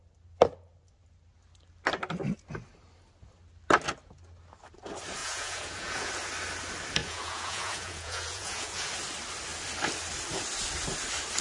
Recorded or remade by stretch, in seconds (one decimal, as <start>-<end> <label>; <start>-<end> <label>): 0.0-5.2 recorded; 5.2-6.1 remade; 6.1-7.0 recorded; 7.0-8.9 remade; 8.9-11.4 recorded